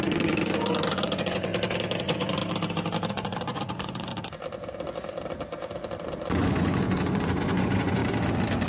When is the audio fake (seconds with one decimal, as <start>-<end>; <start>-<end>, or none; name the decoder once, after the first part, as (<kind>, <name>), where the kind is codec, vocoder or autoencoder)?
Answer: 0.0-1.5 (vocoder, Vocos); 2.0-2.4; 3.1-4.1; 6.3-8.0